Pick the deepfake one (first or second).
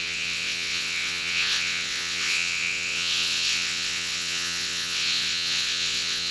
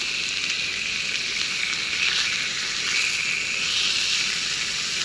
first